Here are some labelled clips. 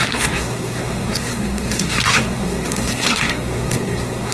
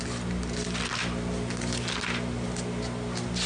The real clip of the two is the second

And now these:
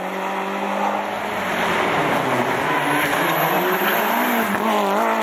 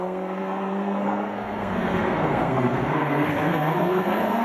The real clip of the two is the first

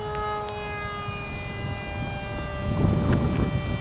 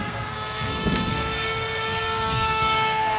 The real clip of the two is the first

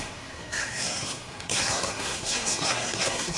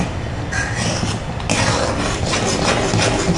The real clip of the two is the second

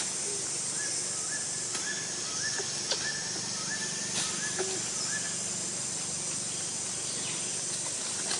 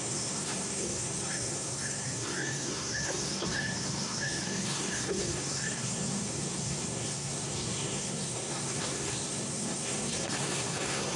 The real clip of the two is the first